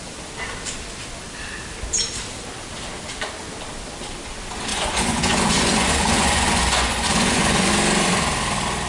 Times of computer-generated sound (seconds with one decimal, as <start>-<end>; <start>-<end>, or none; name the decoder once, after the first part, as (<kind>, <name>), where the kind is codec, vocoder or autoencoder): 4.7-7.7 (vocoder, Vocos)